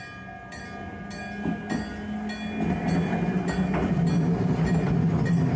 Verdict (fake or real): real